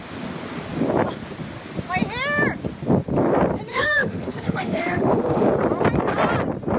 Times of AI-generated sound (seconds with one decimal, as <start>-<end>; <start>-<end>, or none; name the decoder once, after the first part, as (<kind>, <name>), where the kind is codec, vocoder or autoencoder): 3.7-5.5 (autoencoder, DAC-VAE)